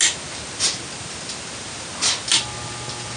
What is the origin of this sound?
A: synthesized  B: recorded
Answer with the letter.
B